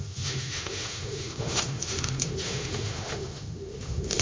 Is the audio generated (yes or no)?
yes